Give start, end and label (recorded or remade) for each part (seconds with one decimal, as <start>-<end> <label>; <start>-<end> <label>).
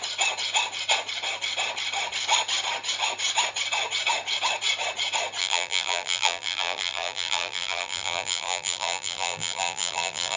0.0-5.4 recorded; 5.4-10.4 remade